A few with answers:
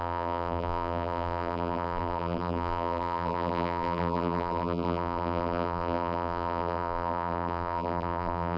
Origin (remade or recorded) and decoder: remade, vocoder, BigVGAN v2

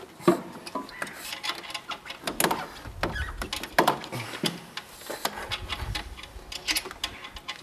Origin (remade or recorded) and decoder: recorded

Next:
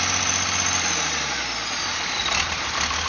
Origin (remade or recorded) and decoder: recorded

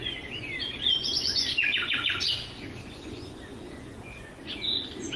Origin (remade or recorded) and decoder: remade, vocoder, Vocos